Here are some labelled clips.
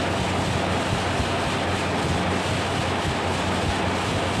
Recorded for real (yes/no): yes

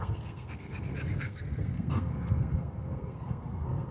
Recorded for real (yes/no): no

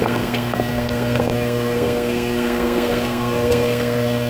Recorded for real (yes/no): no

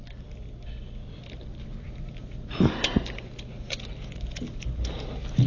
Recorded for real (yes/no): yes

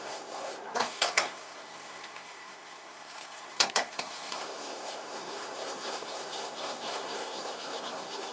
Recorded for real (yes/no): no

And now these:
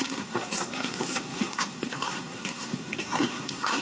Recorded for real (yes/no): no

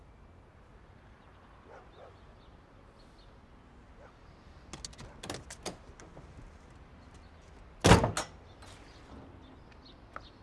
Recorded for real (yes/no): yes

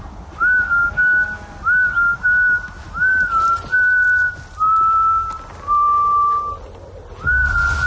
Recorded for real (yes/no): yes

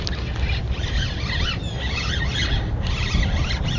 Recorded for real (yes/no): yes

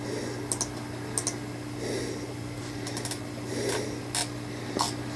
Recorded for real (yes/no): yes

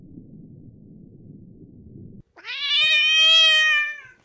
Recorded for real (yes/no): yes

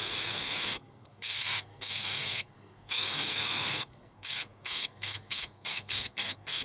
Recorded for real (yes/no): no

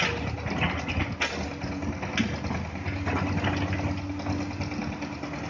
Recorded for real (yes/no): yes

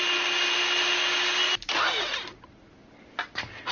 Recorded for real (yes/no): yes